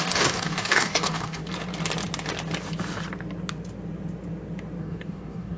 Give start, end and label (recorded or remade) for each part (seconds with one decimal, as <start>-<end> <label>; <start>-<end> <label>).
0.0-1.4 remade; 1.4-4.8 recorded; 4.8-5.6 remade